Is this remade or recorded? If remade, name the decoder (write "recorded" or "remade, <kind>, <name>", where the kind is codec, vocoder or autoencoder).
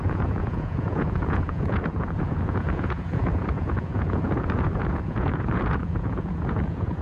remade, vocoder, Vocos